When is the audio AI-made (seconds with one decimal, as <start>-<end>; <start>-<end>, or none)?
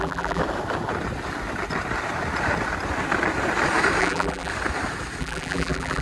0.0-0.4; 4.0-4.5; 5.2-6.0